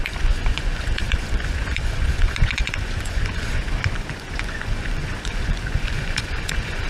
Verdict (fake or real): fake